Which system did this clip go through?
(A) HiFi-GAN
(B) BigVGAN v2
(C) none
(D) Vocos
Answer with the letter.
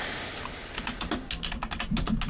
C